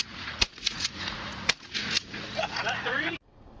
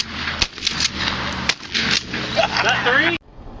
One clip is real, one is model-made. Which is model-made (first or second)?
first